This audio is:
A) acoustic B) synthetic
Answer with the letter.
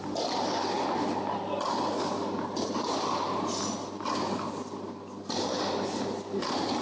A